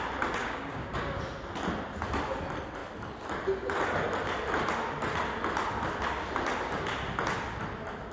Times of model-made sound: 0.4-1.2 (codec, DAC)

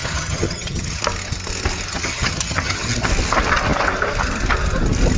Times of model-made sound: 0.0-1.0 (vocoder, HiFi-GAN); 1.9-3.1

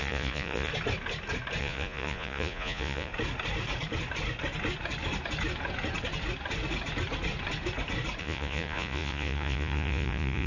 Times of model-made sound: 0.0-0.7 (vocoder, Vocos); 1.6-3.1; 8.2-10.5

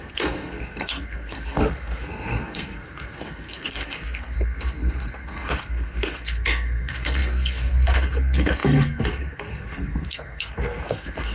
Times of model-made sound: 0.0-11.3 (codec, SNAC)